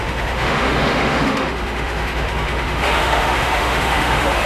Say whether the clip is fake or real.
fake